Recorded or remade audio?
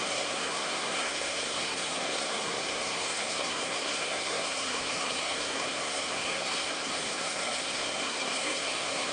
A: remade